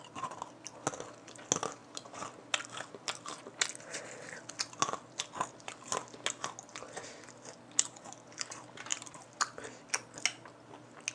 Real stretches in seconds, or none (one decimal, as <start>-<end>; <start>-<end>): 0.0-8.9; 9.9-11.1